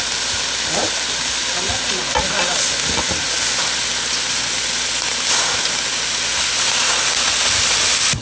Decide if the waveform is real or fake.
real